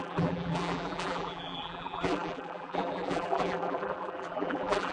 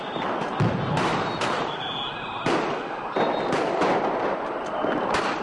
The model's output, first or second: first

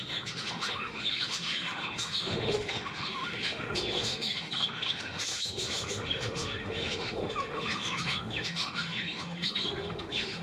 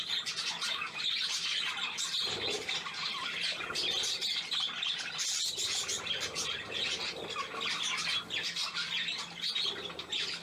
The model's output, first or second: first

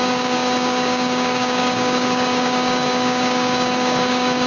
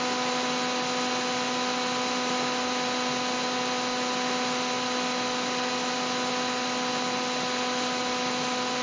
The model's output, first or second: first